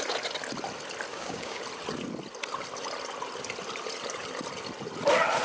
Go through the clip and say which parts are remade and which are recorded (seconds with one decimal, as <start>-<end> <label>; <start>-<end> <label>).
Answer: 0.0-1.1 recorded; 1.1-1.6 remade; 1.6-5.4 recorded